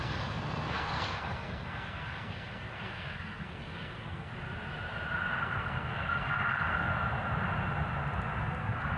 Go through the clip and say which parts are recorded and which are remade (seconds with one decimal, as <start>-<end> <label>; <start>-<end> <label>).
0.0-4.3 remade; 4.3-5.4 recorded; 5.4-6.9 remade; 6.9-8.4 recorded; 8.4-9.0 remade